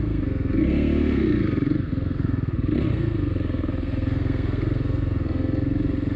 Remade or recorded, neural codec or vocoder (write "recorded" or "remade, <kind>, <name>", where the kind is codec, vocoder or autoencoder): remade, codec, SNAC